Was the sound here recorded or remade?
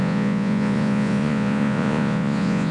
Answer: remade